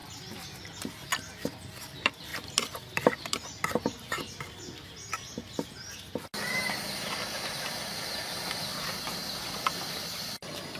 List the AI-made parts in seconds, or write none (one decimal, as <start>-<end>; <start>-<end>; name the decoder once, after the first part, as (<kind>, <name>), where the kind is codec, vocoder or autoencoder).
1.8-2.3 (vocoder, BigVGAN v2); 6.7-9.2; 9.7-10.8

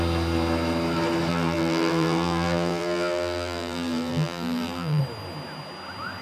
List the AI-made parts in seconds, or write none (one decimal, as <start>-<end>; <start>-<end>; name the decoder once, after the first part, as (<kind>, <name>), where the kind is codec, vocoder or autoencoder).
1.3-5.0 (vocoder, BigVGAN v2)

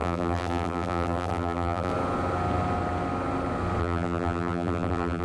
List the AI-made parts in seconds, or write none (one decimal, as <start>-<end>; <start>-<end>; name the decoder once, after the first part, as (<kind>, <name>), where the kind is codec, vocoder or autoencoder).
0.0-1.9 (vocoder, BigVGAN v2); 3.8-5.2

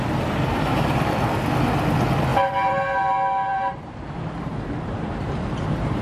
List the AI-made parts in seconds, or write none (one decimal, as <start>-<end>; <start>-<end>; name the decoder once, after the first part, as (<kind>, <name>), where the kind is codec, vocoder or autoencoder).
2.3-3.1 (vocoder, BigVGAN v2); 3.5-6.0